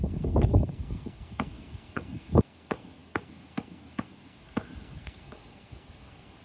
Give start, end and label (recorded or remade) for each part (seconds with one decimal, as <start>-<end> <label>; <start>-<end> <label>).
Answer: 0.0-6.4 remade